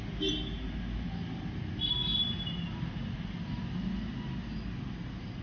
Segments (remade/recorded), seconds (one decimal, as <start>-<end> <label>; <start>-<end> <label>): 0.0-5.4 recorded